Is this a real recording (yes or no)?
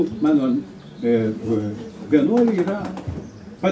yes